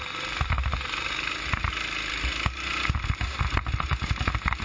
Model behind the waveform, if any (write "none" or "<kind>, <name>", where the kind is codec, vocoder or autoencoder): none